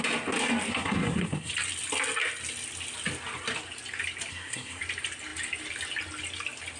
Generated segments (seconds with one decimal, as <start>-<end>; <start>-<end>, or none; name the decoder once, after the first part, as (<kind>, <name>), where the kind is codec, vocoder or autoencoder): 0.7-1.5 (codec, SNAC); 4.3-4.8